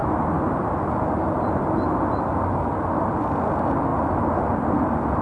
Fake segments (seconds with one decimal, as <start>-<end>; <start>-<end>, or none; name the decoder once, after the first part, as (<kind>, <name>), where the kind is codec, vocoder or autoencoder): 0.0-3.1 (vocoder, BigVGAN v2); 3.9-4.7